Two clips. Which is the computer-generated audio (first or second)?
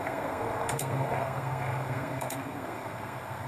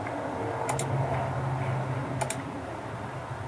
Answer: first